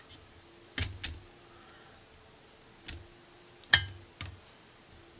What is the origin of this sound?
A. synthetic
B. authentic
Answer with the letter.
B